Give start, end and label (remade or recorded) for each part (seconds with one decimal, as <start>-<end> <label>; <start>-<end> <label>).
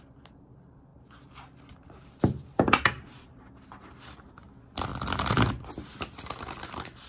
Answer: 0.0-0.9 recorded; 0.9-3.9 remade; 3.9-7.1 recorded